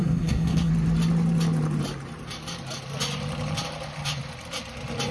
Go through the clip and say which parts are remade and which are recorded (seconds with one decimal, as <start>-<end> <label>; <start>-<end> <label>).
0.0-0.7 remade; 0.7-5.1 recorded